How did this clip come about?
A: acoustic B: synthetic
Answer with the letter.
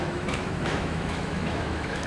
B